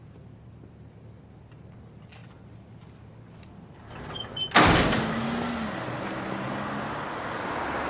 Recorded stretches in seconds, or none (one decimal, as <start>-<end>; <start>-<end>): 0.0-7.9